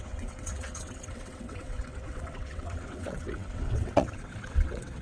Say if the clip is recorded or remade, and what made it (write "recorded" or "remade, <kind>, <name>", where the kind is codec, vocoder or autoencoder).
remade, vocoder, WaveNeXt